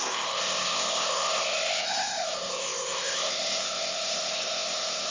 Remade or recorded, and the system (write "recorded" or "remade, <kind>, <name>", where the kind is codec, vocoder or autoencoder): remade, codec, ZipCodec